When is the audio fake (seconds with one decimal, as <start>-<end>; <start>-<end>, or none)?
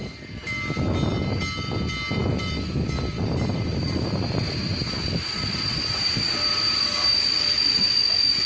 0.0-1.4; 2.2-6.9